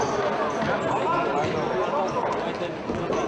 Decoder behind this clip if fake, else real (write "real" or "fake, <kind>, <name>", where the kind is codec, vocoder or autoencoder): real